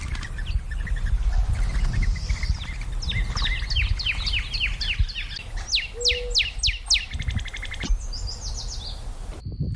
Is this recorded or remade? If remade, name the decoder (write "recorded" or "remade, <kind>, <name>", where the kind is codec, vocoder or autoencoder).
recorded